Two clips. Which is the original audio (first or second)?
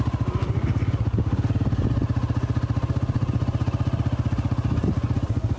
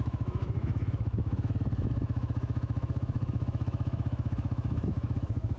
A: first